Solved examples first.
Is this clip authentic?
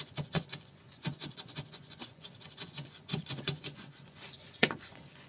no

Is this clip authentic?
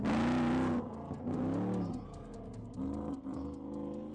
yes